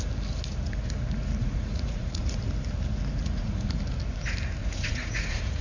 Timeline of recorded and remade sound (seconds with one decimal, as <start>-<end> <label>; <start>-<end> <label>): 0.0-1.4 recorded; 1.4-2.4 remade; 2.4-3.2 recorded; 3.2-3.8 remade; 3.8-4.6 recorded; 4.6-5.6 remade